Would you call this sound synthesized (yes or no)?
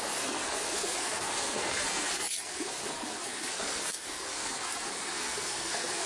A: yes